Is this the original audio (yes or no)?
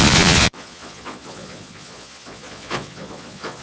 no